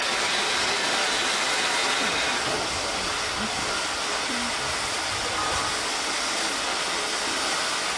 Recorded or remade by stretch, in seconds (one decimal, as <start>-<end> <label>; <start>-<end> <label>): 0.0-8.0 recorded